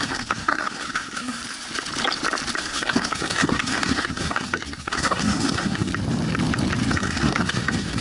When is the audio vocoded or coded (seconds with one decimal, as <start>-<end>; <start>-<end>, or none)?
0.0-1.4; 2.6-5.9; 6.9-8.0